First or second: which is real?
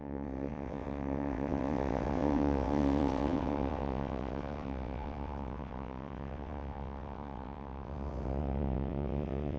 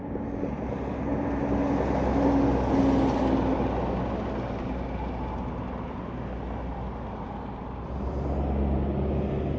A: second